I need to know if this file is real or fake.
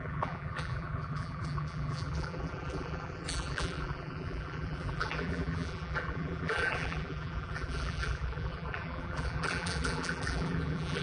fake